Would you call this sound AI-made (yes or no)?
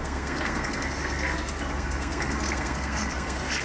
yes